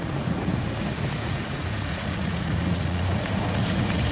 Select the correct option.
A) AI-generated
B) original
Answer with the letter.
A